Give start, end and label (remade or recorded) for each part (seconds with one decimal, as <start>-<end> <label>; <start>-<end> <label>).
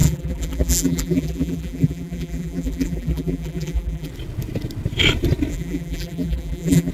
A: 0.0-4.1 remade; 4.1-5.5 recorded; 5.5-6.9 remade